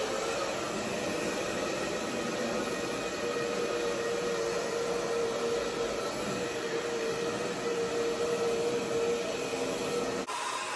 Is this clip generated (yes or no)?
no